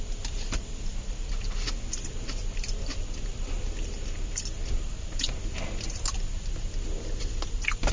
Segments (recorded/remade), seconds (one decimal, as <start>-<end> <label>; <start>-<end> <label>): 0.0-7.9 recorded

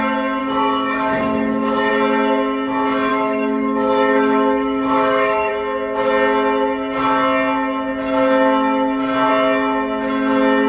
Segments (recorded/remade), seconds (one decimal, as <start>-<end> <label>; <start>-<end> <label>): 0.0-0.4 recorded; 0.4-1.9 remade; 1.9-3.1 recorded; 3.1-5.5 remade; 5.5-10.7 recorded

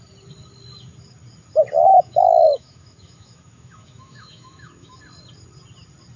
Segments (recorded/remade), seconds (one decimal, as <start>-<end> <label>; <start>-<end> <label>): 0.0-1.9 recorded; 1.9-5.0 remade; 5.0-6.2 recorded

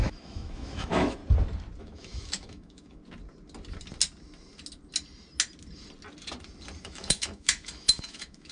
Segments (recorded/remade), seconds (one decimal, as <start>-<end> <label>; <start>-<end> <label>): 0.0-1.2 remade; 1.2-1.8 recorded; 1.8-3.0 remade; 3.0-6.8 recorded; 6.8-8.5 remade

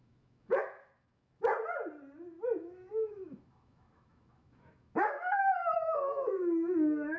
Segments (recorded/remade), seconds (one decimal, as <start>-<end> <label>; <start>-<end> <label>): 0.0-1.5 remade; 1.5-2.6 recorded; 2.6-7.2 remade

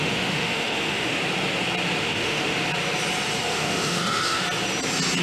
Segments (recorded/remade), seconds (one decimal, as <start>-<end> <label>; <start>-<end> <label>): 0.0-1.2 remade; 1.2-2.0 recorded; 2.0-2.5 remade; 2.5-3.4 recorded; 3.4-4.4 remade; 4.4-5.2 recorded